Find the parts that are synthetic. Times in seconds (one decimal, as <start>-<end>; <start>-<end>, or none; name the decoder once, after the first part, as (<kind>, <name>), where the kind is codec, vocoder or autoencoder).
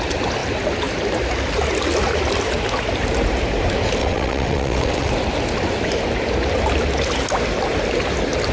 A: 4.0-5.1 (vocoder, WaveNeXt)